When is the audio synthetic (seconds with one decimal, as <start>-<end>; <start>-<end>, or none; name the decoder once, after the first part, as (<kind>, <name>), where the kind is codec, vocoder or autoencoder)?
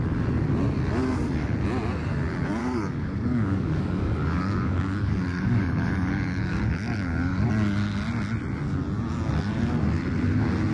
2.6-7.5 (codec, DAC)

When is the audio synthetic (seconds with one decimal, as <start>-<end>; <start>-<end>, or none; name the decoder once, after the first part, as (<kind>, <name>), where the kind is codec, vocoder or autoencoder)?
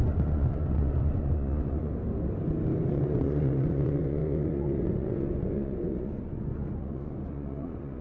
0.0-1.9 (vocoder, Vocos); 2.9-8.0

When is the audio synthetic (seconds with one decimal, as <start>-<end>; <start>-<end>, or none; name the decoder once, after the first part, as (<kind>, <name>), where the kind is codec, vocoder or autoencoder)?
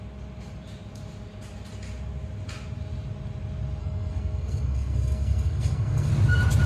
3.8-6.1 (codec, SNAC)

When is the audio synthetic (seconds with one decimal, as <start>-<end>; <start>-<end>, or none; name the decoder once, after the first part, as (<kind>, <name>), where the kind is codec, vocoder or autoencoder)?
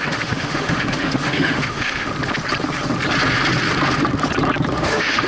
0.0-2.1 (autoencoder, DAC-VAE); 4.7-5.3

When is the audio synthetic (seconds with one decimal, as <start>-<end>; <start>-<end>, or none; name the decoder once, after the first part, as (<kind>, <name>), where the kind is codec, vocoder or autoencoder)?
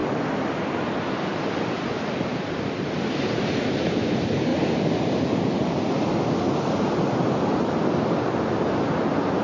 0.0-0.5 (vocoder, BigVGAN v2); 1.3-3.3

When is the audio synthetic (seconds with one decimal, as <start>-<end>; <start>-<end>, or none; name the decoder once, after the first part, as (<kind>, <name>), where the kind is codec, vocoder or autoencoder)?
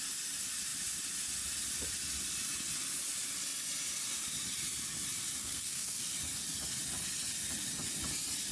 5.4-6.0 (codec, SNAC)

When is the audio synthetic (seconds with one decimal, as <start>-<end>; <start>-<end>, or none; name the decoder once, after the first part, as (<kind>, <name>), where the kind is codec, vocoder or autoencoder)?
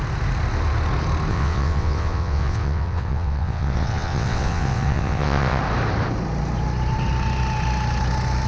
1.3-5.6 (vocoder, WaveNeXt)